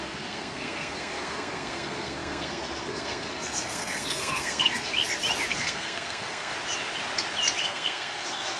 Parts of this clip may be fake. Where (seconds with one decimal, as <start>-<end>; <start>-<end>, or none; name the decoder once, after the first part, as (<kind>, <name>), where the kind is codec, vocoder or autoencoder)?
0.0-4.9 (codec, SNAC); 5.5-6.5; 7.6-8.6